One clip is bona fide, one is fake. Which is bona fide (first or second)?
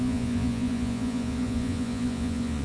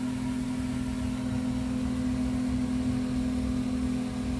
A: second